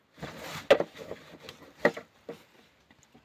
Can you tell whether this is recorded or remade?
recorded